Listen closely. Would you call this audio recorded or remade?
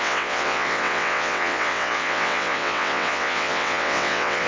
remade